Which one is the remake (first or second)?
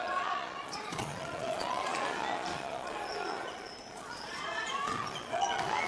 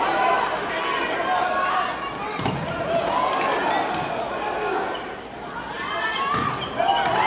first